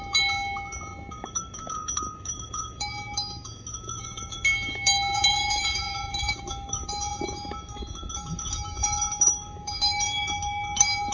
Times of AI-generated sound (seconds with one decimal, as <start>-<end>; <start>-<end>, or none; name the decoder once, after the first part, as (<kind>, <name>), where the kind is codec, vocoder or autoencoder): 0.0-11.1 (autoencoder, DAC-VAE)